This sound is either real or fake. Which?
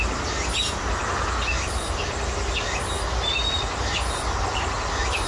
real